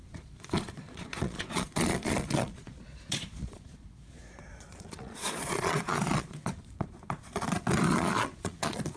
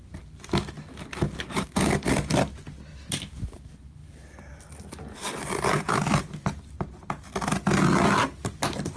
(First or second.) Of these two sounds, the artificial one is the first